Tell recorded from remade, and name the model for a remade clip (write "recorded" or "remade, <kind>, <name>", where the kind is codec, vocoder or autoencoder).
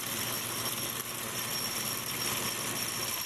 recorded